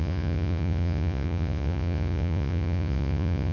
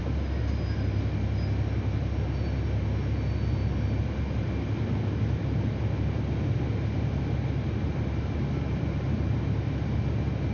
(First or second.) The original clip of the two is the second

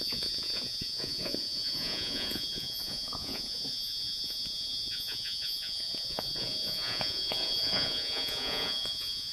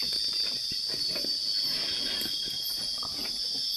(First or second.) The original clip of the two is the second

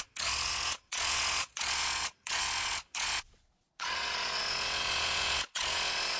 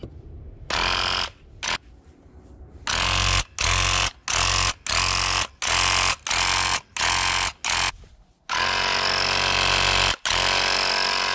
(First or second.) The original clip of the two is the second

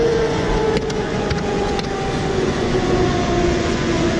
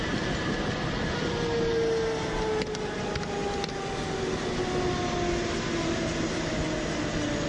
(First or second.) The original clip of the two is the second